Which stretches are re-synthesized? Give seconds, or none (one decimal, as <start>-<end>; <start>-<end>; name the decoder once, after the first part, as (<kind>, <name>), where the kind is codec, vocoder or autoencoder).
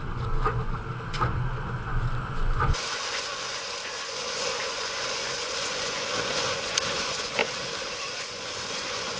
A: 0.0-7.4 (vocoder, Vocos); 8.0-9.2